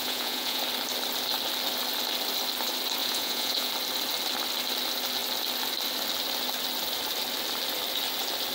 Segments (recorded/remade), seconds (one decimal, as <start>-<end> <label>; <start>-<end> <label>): 0.0-0.6 remade; 0.6-3.0 recorded; 3.0-3.7 remade; 3.7-8.5 recorded